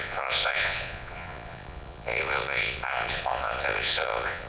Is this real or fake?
fake